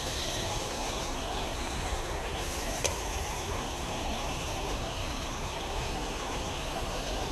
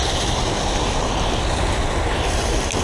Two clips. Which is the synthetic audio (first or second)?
first